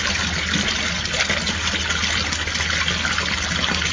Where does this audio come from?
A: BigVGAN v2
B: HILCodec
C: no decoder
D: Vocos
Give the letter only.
C